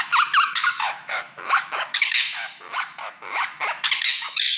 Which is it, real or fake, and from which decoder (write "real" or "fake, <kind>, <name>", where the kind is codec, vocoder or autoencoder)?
fake, autoencoder, DAC-VAE